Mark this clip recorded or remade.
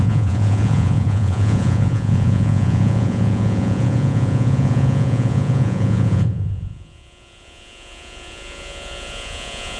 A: remade